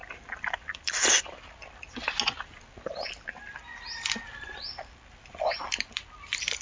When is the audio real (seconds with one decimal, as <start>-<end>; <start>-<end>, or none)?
0.0-6.6